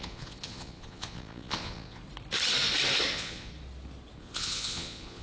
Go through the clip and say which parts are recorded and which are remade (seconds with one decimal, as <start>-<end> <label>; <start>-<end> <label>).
0.0-2.0 remade; 2.0-3.1 recorded; 3.1-3.5 remade; 3.5-4.2 recorded; 4.2-5.2 remade